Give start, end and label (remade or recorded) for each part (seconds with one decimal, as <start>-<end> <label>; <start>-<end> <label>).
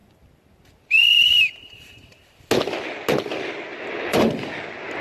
0.0-2.4 remade; 2.4-3.7 recorded; 3.7-4.5 remade; 4.5-5.0 recorded